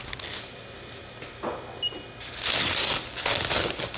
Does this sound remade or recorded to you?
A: recorded